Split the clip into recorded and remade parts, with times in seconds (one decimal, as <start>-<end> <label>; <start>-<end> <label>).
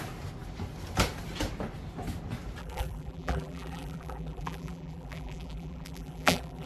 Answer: 0.0-2.6 recorded; 2.6-6.7 remade